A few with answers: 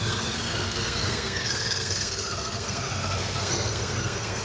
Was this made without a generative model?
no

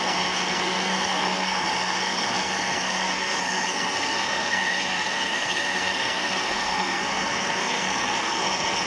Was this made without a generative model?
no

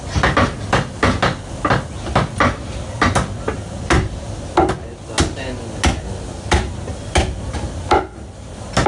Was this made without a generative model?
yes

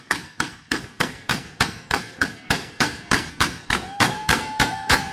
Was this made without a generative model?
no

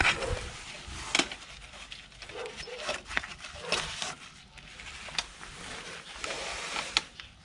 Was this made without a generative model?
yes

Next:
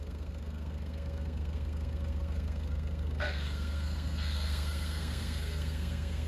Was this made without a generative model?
no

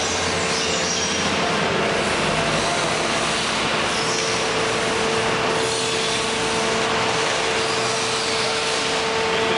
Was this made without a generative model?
yes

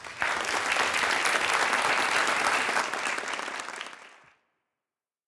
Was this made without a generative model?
yes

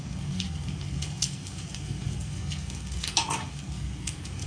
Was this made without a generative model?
no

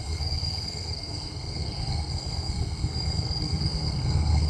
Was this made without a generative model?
no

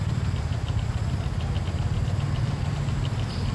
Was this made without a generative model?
yes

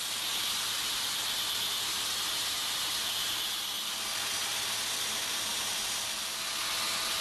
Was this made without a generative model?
yes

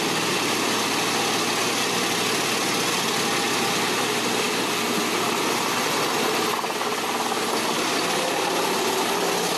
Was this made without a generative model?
yes